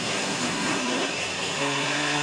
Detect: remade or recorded remade